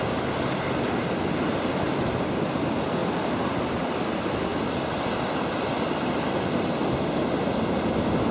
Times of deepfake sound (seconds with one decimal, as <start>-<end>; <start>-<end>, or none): 3.0-3.6; 4.5-7.3